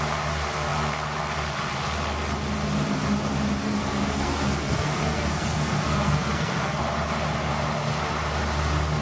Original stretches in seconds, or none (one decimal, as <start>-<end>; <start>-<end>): 0.0-3.6; 6.8-9.0